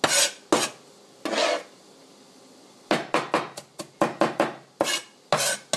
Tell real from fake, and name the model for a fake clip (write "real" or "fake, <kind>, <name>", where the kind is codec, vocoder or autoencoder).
real